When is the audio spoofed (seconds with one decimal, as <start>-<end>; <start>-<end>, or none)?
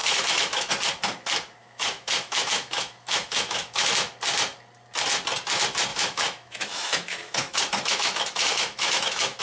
0.0-0.7; 1.6-3.9; 5.9-9.4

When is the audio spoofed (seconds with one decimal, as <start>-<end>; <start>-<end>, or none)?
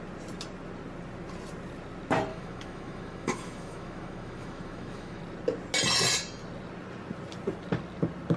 2.3-5.2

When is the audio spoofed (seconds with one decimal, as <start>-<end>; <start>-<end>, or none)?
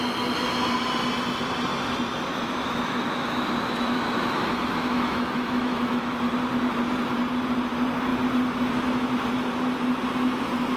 2.3-6.3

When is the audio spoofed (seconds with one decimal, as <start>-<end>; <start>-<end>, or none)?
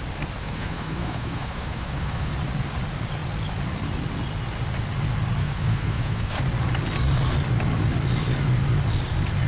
0.4-2.3; 5.4-6.4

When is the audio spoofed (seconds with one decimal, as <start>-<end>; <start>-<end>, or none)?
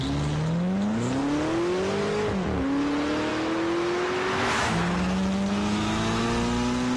3.3-6.2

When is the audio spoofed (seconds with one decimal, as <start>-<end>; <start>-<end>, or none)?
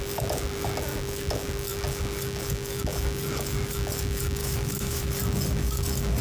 4.4-5.1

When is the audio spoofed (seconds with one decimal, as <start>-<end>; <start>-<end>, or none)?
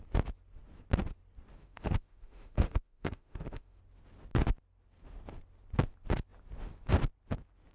1.6-3.8